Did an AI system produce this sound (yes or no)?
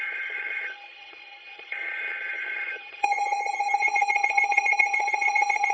yes